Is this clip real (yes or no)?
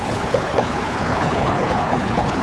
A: no